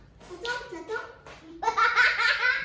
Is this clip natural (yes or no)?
yes